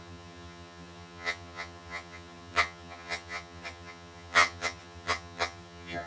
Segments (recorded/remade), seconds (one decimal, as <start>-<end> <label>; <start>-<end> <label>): 0.0-6.1 remade